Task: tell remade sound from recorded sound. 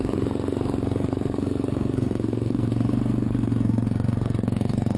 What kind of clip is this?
remade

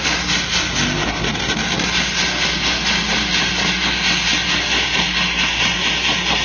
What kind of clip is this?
recorded